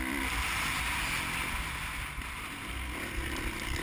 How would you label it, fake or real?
real